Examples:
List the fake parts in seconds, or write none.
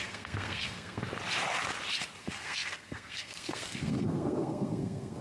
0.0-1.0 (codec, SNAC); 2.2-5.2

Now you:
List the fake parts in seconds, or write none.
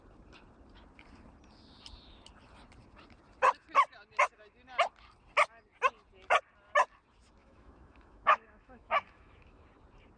7.4-9.6 (autoencoder, DAC-VAE)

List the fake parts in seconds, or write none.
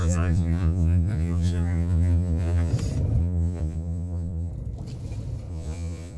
0.0-2.7 (vocoder, Vocos); 3.2-4.5; 5.5-6.2